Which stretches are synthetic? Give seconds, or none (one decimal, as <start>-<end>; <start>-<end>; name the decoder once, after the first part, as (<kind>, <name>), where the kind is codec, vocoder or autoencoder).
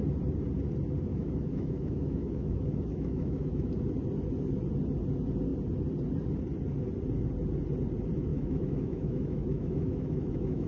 1.1-3.7 (autoencoder, DAC-VAE); 8.3-10.7